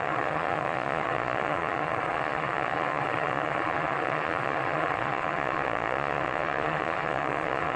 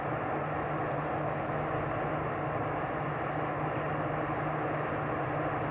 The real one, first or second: second